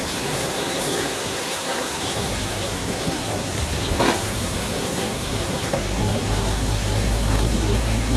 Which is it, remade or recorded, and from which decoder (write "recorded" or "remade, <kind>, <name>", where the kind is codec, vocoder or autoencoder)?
remade, codec, SNAC